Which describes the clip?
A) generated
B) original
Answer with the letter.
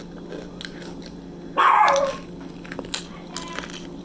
B